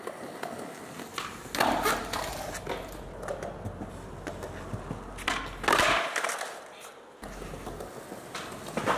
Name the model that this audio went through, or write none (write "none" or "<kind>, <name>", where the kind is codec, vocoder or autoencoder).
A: none